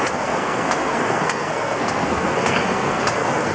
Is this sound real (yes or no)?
no